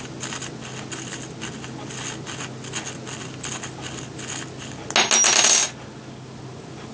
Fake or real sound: real